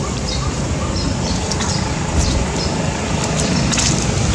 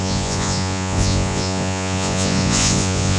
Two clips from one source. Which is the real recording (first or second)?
first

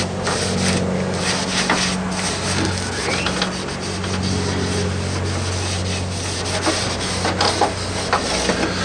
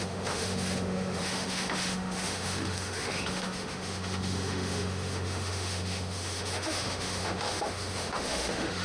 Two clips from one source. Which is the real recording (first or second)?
first